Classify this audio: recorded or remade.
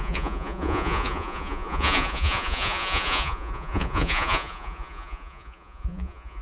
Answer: remade